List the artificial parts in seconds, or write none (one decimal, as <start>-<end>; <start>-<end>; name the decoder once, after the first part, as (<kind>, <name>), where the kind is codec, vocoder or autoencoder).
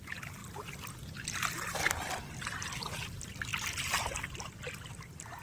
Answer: none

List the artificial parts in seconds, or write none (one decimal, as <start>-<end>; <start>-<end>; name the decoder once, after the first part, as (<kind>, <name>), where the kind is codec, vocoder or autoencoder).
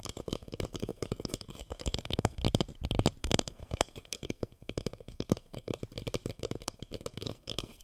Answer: 0.0-2.4 (codec, SNAC); 3.2-5.8; 6.3-7.8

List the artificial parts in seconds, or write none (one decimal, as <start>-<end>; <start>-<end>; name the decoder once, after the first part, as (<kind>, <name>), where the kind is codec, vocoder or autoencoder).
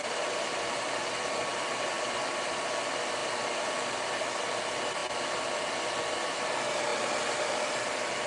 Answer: none